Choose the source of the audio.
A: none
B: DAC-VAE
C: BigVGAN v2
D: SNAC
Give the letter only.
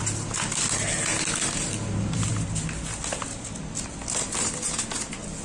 A